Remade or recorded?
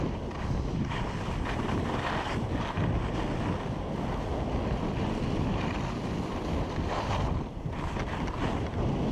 recorded